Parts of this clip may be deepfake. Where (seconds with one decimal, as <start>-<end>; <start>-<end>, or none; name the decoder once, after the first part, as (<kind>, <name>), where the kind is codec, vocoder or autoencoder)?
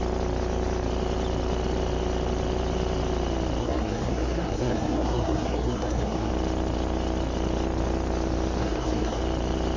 3.6-6.3 (codec, SNAC); 8.6-9.2